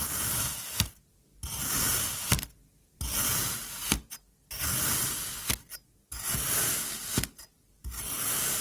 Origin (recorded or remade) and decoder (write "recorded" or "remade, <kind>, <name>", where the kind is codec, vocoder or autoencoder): recorded